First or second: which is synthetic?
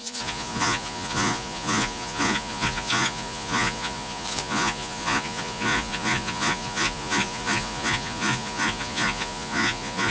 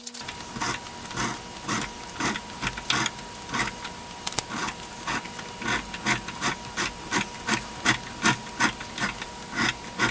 first